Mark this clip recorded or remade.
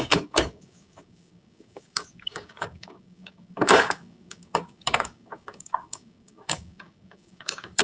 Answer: remade